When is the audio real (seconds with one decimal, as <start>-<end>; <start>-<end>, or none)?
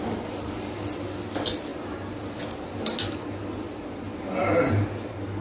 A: 0.0-5.4